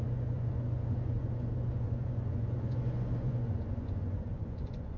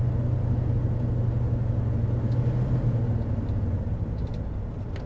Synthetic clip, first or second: first